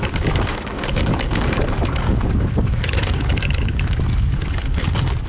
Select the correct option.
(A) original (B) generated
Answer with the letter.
B